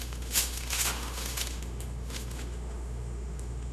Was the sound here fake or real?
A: fake